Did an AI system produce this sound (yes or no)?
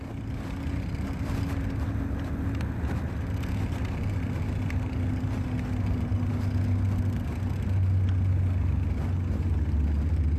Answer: no